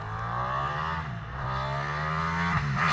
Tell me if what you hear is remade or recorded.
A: recorded